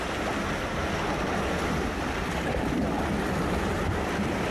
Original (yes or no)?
yes